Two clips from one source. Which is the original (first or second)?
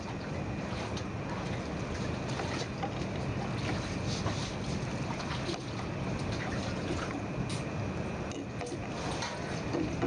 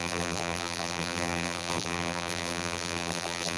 first